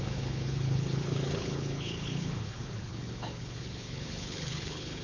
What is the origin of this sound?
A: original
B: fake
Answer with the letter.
B